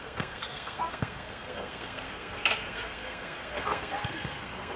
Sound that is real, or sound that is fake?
fake